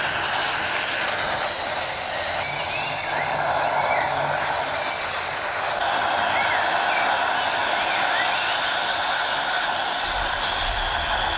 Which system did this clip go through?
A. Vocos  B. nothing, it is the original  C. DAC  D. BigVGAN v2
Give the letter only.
B